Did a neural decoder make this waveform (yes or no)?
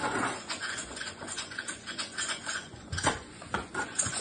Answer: yes